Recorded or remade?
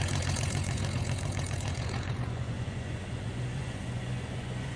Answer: remade